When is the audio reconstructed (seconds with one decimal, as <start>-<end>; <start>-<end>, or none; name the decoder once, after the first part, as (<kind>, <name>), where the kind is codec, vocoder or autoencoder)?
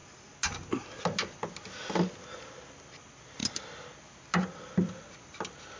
none